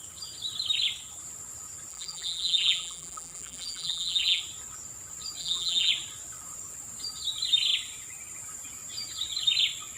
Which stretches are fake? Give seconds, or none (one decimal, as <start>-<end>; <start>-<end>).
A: 1.9-4.4; 5.4-5.9